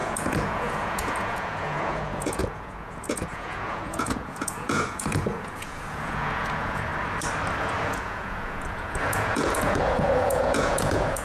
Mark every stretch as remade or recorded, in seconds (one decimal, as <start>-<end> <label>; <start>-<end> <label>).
0.0-6.9 remade; 6.9-7.6 recorded; 7.6-11.2 remade